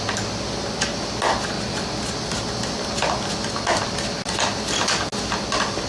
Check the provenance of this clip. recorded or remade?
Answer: recorded